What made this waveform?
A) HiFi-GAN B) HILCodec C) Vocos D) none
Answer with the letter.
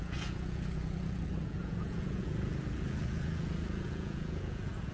C